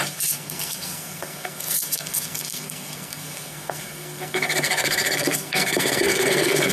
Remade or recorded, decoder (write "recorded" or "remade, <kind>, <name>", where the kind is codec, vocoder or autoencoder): remade, codec, SNAC